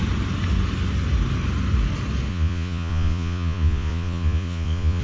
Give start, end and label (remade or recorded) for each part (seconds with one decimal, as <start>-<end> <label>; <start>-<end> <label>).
0.0-2.3 recorded; 2.3-5.0 remade